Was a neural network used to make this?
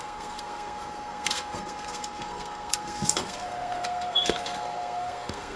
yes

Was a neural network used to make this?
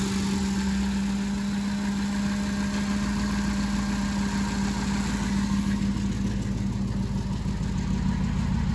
no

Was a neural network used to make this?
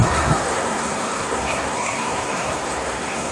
yes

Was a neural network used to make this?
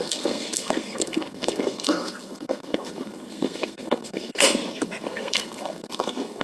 yes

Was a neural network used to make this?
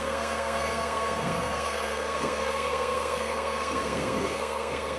yes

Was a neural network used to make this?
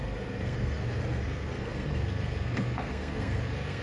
yes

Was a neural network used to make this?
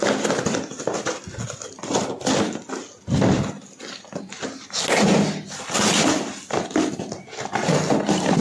no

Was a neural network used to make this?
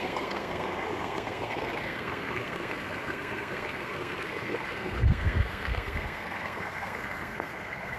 yes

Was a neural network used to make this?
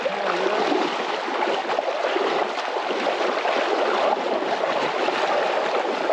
no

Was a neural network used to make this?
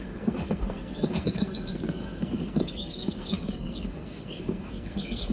yes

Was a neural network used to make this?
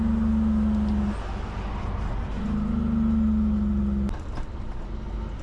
no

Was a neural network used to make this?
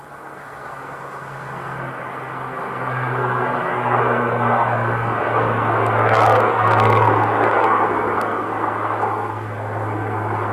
yes